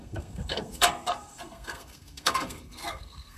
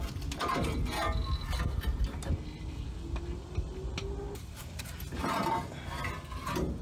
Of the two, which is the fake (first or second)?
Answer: first